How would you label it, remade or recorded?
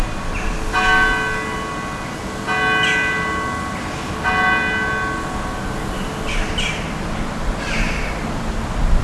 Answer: recorded